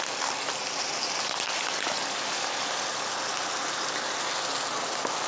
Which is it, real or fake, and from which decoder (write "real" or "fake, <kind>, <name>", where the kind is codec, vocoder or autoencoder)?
real